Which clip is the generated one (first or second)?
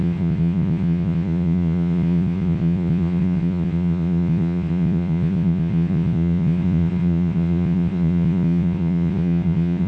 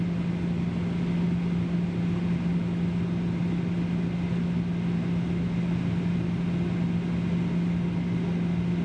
first